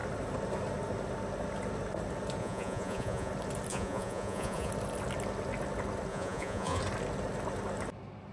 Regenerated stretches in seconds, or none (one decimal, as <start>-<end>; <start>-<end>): 2.4-3.3; 3.7-4.7; 6.1-6.8